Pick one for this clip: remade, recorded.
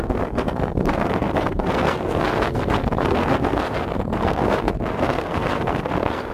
remade